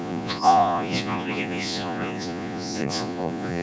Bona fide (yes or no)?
no